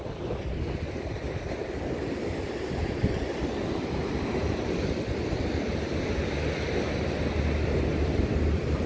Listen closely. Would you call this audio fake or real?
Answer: fake